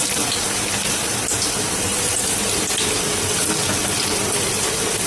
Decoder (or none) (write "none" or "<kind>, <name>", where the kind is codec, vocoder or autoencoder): none